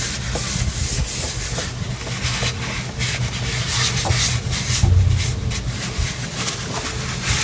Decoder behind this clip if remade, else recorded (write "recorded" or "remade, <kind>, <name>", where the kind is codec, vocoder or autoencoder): recorded